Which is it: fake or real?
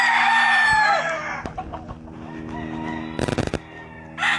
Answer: real